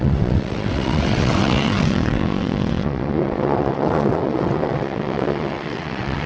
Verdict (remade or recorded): remade